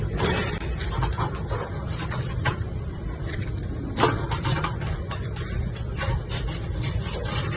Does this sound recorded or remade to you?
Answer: remade